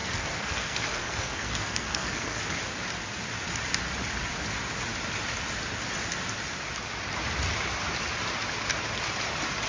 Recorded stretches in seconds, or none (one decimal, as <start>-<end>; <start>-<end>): 2.4-9.7